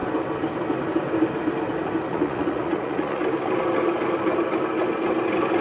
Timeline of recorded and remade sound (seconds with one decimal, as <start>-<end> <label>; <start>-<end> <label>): 0.0-2.1 recorded; 2.1-3.2 remade; 3.2-5.6 recorded